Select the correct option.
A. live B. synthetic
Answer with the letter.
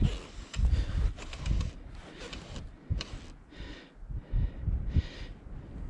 A